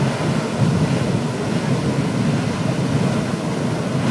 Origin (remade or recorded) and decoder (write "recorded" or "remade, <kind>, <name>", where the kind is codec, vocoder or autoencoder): recorded